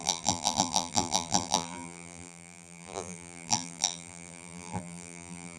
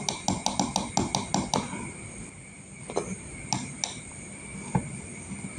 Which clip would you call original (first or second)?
second